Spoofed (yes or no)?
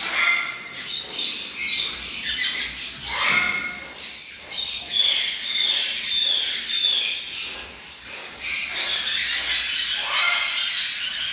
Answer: no